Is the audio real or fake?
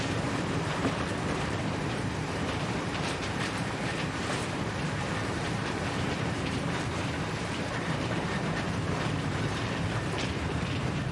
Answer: fake